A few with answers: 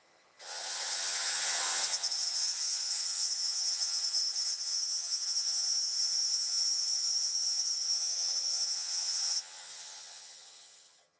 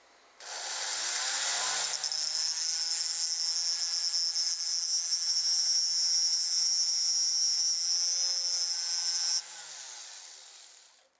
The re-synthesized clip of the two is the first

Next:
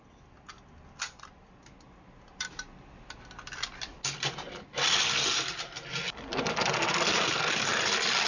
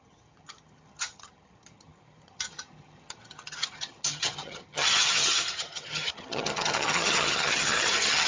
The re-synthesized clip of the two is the second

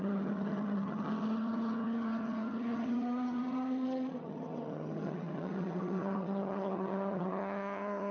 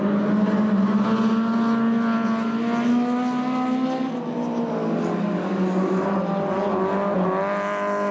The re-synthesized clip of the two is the first